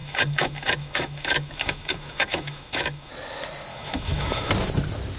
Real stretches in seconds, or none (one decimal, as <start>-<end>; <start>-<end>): 3.1-3.7; 4.5-5.2